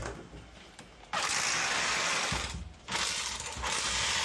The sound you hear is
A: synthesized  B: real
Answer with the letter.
B